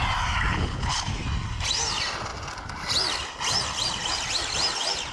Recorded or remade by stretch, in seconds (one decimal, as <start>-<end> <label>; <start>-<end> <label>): 0.0-0.5 recorded; 0.5-1.1 remade; 1.1-5.1 recorded